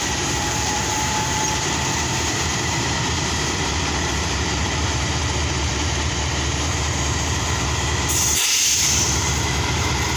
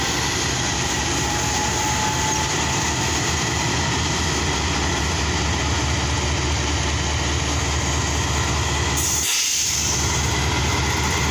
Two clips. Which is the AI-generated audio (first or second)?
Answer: first